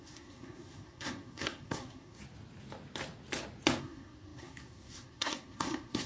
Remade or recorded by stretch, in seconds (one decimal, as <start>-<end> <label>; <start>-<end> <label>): 0.0-2.2 remade; 2.2-3.8 recorded; 3.8-6.1 remade